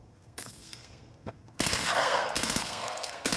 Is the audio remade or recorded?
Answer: remade